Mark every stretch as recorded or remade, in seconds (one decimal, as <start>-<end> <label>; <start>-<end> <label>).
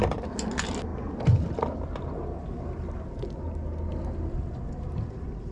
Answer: 0.0-5.5 recorded